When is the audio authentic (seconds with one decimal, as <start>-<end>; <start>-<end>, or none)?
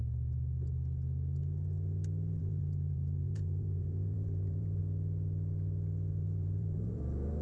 0.0-2.4; 4.8-6.1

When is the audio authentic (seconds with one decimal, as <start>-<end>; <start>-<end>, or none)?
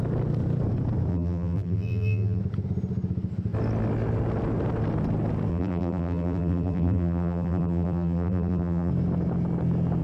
0.0-1.1; 2.4-5.5; 8.9-10.0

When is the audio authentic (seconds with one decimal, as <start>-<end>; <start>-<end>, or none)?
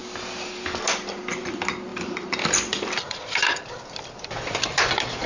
0.0-1.9